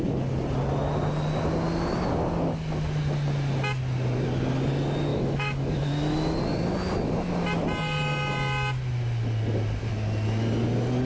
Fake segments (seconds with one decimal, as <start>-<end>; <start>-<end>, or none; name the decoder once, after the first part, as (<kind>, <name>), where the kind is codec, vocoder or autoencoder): 5.1-6.4 (autoencoder, DAC-VAE)